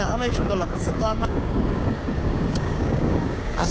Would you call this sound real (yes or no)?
no